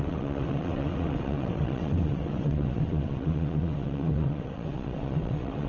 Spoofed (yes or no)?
yes